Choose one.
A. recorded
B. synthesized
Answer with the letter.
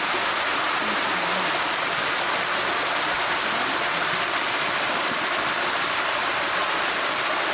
A